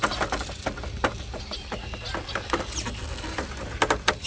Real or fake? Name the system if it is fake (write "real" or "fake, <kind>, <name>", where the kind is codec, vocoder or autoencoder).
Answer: real